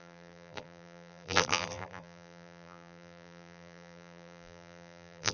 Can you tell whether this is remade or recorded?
remade